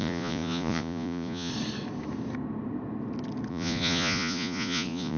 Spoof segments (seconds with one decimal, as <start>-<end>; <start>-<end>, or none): 0.0-1.5; 3.5-5.2